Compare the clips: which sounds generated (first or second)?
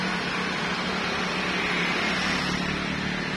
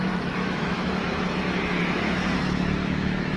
second